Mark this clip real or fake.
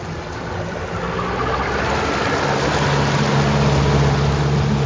real